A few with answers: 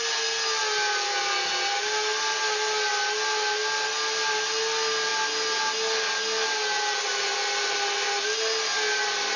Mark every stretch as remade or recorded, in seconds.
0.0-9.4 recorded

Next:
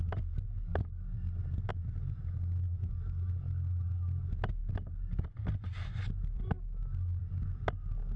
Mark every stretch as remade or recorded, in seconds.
0.0-8.2 recorded

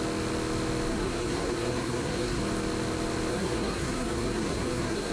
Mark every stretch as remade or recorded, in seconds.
0.0-0.9 recorded; 0.9-2.4 remade; 2.4-3.3 recorded; 3.3-5.1 remade

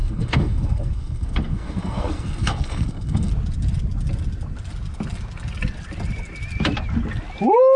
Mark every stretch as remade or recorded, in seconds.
0.0-3.3 remade; 3.3-7.8 recorded

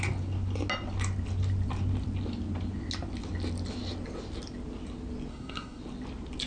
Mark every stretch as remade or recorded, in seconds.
0.0-5.3 recorded; 5.3-5.8 remade; 5.8-6.5 recorded

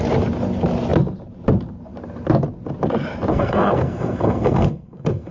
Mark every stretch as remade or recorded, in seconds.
0.0-3.3 recorded; 3.3-5.3 remade

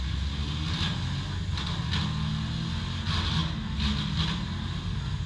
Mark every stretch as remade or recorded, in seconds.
0.0-5.3 recorded